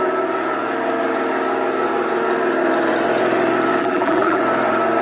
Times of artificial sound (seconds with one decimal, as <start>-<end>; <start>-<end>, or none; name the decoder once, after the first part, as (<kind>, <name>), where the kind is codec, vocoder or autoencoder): 3.8-4.4 (vocoder, BigVGAN v2)